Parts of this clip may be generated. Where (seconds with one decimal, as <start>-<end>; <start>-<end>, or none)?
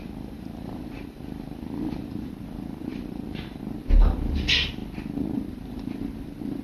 0.0-2.3; 2.9-3.6